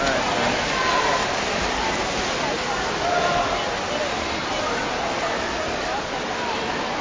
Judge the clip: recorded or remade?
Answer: recorded